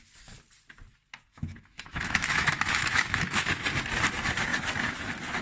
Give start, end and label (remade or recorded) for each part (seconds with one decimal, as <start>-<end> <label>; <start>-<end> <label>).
0.0-1.3 recorded; 1.3-3.6 remade; 3.6-5.4 recorded